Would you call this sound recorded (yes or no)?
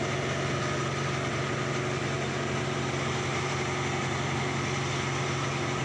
yes